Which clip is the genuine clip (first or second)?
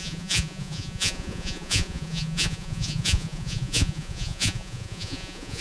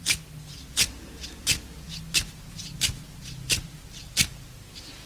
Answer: second